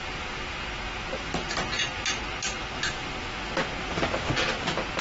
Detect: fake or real real